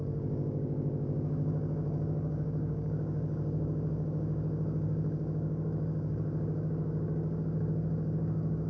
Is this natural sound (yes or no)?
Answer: no